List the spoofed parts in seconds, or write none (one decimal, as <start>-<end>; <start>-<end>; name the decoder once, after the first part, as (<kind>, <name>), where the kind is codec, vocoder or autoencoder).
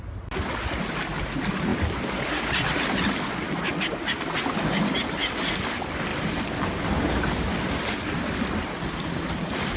1.7-2.8 (vocoder, BigVGAN v2); 6.1-8.9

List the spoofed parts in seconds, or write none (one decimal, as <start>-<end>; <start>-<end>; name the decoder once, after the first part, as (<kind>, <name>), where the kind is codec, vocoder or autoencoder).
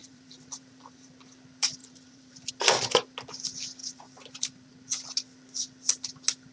0.0-1.1 (vocoder, BigVGAN v2); 1.8-2.5; 3.8-4.7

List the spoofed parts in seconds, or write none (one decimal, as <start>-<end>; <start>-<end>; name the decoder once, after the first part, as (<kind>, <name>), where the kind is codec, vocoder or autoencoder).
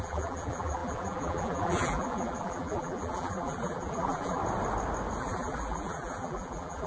0.0-4.4 (vocoder, BigVGAN v2); 5.2-6.9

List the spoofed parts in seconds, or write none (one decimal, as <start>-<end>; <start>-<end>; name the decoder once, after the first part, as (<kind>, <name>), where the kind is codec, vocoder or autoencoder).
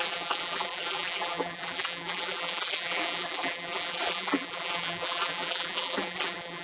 0.0-6.6 (vocoder, BigVGAN v2)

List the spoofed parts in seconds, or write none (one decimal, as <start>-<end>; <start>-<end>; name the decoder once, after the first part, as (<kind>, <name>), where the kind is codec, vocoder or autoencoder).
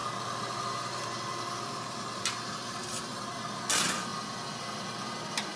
none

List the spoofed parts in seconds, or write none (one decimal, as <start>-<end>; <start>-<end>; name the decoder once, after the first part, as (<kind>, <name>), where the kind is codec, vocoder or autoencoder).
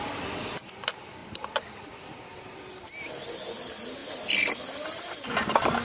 1.2-2.8 (vocoder, BigVGAN v2)